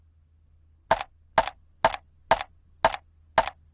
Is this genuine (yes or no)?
yes